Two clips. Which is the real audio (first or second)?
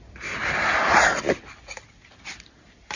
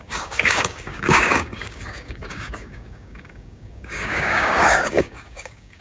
first